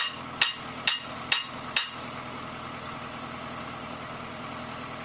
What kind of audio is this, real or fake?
real